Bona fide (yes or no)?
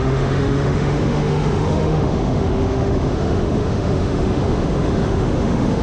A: no